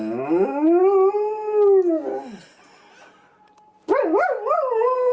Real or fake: real